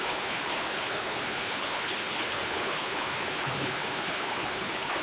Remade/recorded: remade